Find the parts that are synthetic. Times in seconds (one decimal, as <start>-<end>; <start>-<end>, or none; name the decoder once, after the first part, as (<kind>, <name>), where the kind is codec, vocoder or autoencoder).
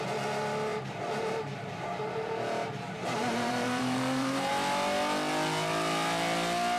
0.7-4.5 (vocoder, BigVGAN v2)